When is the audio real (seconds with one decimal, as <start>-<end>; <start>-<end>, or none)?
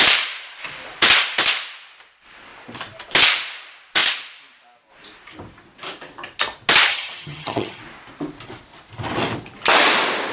0.0-6.9; 7.8-10.3